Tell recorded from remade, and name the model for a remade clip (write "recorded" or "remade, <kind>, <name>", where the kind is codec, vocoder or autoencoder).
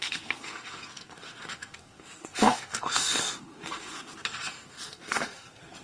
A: remade, codec, SNAC